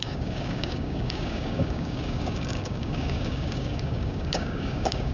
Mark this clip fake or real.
fake